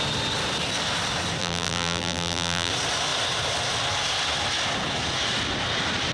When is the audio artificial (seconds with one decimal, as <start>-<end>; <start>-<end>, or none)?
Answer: 1.4-2.7

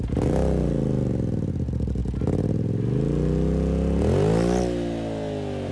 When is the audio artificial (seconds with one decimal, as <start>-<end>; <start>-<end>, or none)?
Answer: none

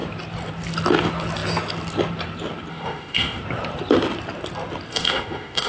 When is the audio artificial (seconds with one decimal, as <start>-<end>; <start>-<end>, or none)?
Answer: 2.7-3.4; 4.9-5.7

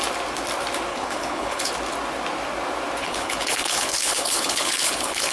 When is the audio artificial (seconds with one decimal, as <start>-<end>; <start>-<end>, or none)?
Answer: 0.9-1.7; 3.0-5.3

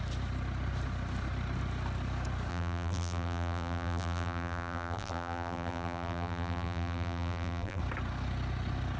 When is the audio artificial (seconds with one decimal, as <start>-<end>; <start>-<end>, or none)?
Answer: 2.5-7.8

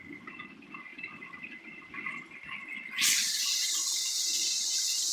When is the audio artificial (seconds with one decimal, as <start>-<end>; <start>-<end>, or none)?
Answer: 0.9-2.6; 3.2-4.0

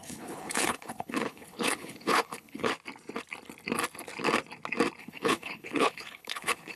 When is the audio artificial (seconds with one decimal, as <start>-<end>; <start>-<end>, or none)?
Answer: 0.0-2.7; 5.0-6.8

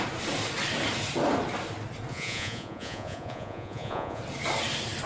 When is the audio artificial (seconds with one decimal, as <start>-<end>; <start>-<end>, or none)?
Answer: 2.1-4.2